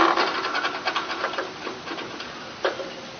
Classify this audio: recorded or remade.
recorded